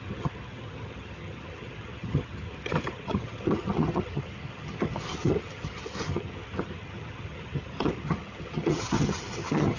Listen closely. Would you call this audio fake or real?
fake